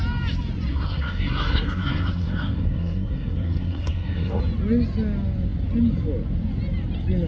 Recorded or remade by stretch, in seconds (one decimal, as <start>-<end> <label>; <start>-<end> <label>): 0.0-0.7 recorded; 0.7-4.4 remade; 4.4-7.3 recorded